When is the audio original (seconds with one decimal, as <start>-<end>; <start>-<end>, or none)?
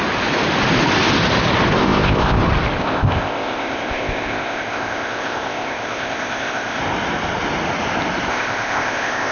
0.0-1.8; 2.4-2.8; 6.8-8.3